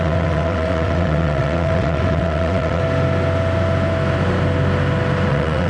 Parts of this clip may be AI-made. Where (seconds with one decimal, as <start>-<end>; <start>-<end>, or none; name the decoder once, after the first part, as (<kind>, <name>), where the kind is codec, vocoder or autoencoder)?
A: 0.0-2.8 (vocoder, WaveNeXt); 5.3-5.7